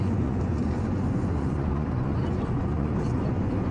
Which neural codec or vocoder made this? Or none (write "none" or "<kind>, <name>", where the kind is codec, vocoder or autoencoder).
vocoder, Vocos